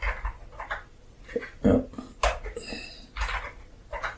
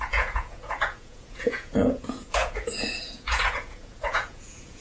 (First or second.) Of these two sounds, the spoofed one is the second